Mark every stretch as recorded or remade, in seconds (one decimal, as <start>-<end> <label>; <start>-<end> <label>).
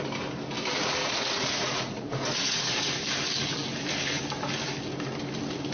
0.0-1.0 recorded; 1.0-2.8 remade; 2.8-5.7 recorded